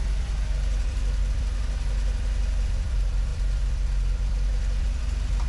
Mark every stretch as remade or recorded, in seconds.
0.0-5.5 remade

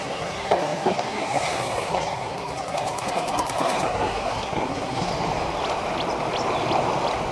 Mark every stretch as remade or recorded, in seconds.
0.0-5.1 remade; 5.1-7.3 recorded